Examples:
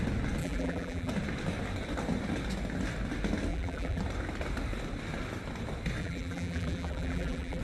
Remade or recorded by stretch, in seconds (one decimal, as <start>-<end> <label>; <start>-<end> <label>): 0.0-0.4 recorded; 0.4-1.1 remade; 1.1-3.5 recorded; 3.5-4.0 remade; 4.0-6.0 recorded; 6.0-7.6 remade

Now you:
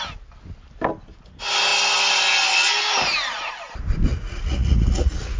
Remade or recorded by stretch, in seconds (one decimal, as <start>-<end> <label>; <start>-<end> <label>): 0.0-4.1 recorded; 4.1-5.4 remade

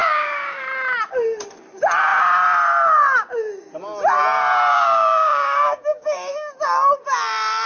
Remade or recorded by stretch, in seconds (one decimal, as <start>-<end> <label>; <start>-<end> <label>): 0.0-0.6 remade; 0.6-4.7 recorded; 4.7-6.5 remade; 6.5-7.7 recorded

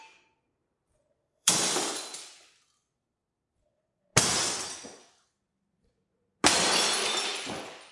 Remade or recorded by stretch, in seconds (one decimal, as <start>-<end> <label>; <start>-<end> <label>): 0.0-0.6 recorded; 0.6-1.5 remade; 1.5-7.9 recorded